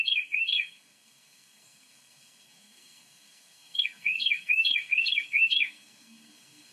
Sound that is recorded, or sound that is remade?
remade